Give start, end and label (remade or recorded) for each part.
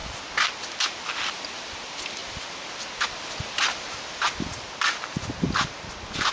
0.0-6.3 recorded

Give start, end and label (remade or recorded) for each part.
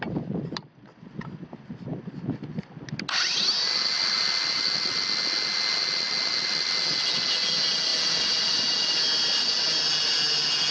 0.0-10.7 recorded